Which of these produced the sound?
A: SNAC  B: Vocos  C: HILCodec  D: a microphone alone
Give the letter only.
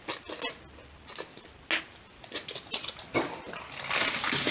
D